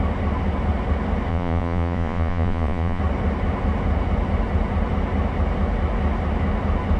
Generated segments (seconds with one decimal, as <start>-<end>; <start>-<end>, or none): 1.3-3.0